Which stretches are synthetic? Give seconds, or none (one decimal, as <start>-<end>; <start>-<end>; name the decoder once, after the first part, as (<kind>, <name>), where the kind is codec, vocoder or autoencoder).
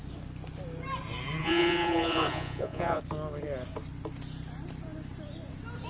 1.4-3.0 (vocoder, Vocos)